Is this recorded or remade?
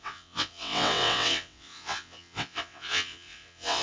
remade